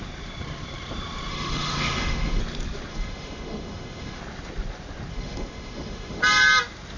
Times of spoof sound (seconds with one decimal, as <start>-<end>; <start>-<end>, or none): 1.3-2.4; 2.9-4.2; 5.1-6.2